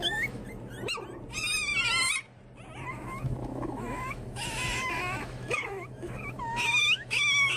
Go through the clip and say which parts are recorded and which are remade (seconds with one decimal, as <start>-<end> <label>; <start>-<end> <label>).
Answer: 0.0-0.4 remade; 0.4-2.9 recorded; 2.9-7.6 remade